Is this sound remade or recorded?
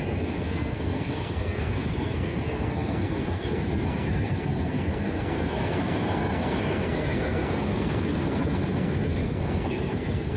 remade